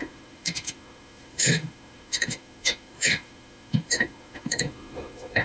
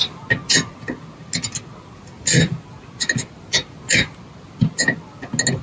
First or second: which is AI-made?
first